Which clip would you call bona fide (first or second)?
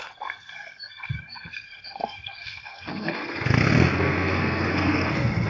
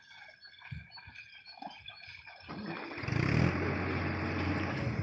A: second